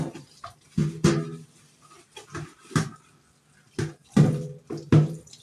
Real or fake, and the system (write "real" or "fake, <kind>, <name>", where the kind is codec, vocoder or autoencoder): real